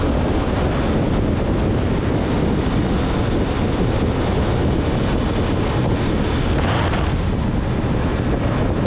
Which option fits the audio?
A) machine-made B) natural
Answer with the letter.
B